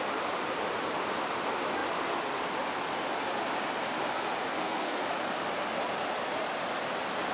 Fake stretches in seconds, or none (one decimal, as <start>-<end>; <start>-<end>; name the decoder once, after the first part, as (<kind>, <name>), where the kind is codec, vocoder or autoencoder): 4.5-5.0 (codec, SNAC)